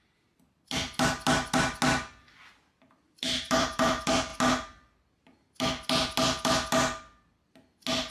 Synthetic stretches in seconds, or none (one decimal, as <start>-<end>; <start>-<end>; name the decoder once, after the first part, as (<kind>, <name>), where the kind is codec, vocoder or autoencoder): 3.1-4.3 (vocoder, BigVGAN v2)